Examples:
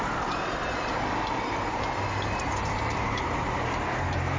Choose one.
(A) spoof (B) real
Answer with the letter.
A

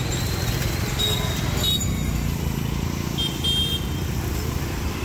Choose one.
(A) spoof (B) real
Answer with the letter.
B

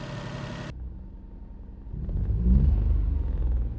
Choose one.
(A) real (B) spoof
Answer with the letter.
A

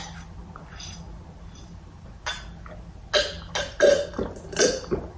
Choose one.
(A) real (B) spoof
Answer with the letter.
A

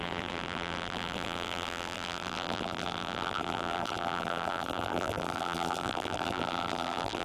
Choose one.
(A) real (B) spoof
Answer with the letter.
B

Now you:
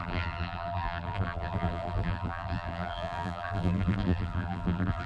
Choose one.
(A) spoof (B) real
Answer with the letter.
A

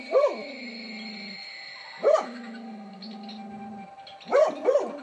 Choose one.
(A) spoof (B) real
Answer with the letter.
B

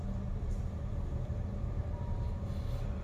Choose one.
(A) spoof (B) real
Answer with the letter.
A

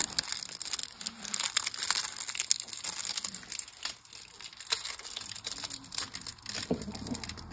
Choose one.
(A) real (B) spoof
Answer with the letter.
A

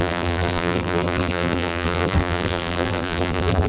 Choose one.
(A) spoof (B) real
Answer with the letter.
A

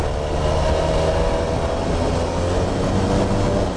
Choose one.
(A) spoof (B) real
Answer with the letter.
B